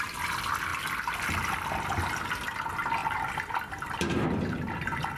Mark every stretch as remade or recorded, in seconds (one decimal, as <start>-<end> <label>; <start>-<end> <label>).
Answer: 0.0-3.0 recorded; 3.0-4.7 remade; 4.7-5.2 recorded